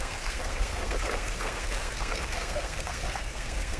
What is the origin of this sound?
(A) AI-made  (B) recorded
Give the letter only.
A